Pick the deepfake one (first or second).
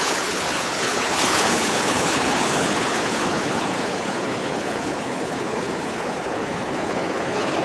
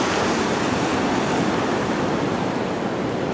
first